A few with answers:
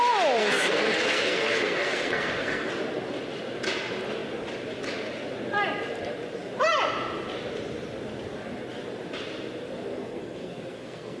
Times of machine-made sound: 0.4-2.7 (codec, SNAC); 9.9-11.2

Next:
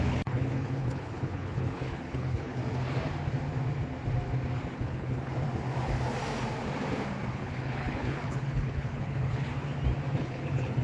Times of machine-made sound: 0.0-2.6 (codec, HILCodec); 4.7-5.3; 7.3-9.5; 10.1-10.8

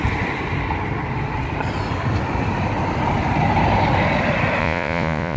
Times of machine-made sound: 4.6-5.4 (vocoder, Vocos)

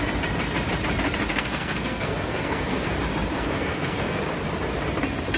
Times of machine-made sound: 1.3-2.9 (codec, SNAC); 3.3-4.2

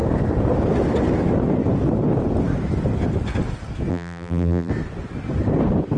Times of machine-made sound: 3.9-4.7 (vocoder, BigVGAN v2)

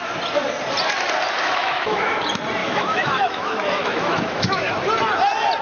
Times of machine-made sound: 1.4-2.2 (autoencoder, DAC-VAE); 2.6-4.7